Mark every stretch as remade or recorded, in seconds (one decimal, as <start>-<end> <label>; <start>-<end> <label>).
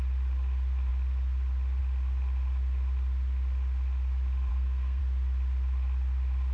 0.0-4.5 recorded; 4.5-5.0 remade; 5.0-6.5 recorded